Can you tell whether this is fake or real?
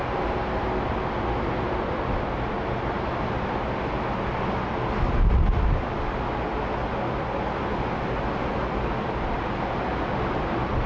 real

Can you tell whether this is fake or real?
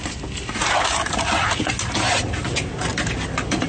real